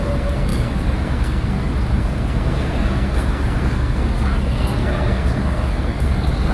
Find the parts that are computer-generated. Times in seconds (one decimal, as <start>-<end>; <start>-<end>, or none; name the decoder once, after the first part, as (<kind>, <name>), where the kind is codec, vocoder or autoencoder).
0.0-6.5 (codec, SNAC)